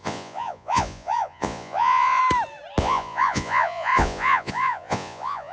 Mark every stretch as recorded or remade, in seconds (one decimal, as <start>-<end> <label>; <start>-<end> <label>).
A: 0.0-2.2 remade; 2.2-2.8 recorded; 2.8-5.5 remade